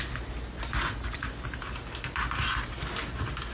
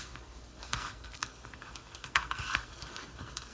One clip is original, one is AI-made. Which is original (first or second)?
first